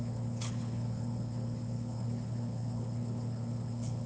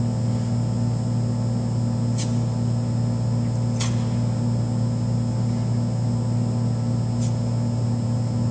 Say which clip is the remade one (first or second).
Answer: first